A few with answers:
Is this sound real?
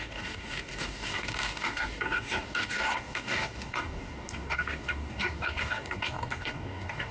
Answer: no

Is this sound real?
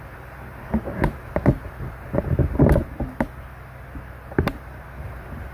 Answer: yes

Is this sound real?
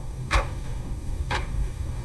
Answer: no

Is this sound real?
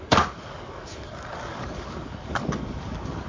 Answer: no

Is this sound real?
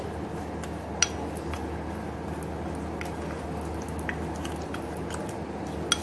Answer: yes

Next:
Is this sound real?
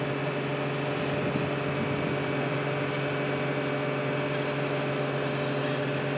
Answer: yes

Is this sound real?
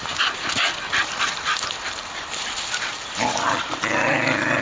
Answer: yes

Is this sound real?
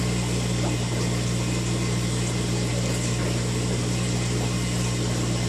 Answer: yes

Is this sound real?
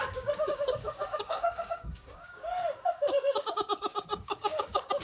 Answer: no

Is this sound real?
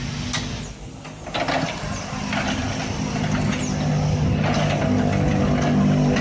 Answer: yes